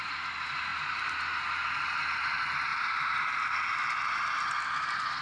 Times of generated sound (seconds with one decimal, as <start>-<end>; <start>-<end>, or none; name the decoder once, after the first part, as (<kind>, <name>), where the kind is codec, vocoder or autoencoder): 0.7-2.0 (vocoder, BigVGAN v2); 2.7-4.0